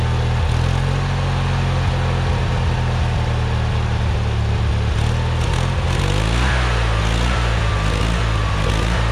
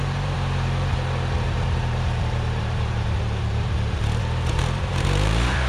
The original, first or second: first